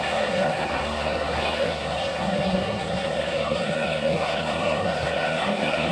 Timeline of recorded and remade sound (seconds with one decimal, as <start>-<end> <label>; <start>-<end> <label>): 0.0-5.9 remade